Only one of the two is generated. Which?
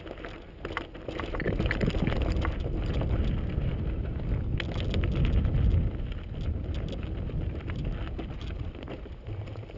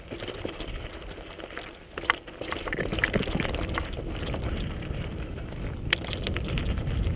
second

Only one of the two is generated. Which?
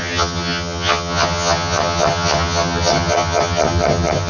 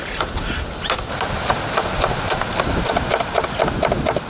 first